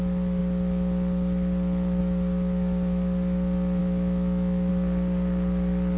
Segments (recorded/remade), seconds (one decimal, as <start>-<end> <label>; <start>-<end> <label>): 0.0-3.8 recorded; 3.8-4.7 remade; 4.7-6.0 recorded